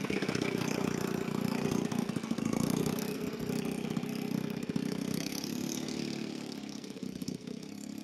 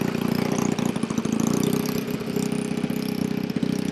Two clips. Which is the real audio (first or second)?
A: second